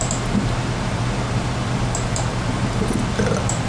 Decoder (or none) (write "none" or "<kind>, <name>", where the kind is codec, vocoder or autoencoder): none